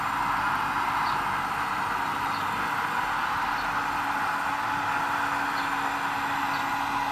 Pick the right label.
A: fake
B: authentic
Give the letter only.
B